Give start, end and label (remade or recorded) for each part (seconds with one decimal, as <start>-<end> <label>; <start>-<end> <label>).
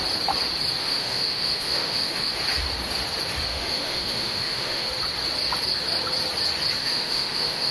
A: 0.0-0.8 recorded; 0.8-2.3 remade; 2.3-3.5 recorded; 3.5-4.9 remade; 4.9-6.8 recorded; 6.8-7.7 remade